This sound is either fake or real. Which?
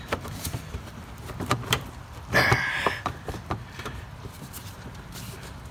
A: fake